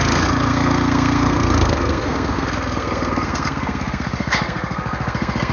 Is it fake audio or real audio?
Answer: fake